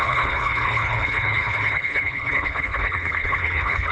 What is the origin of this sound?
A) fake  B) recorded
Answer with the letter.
A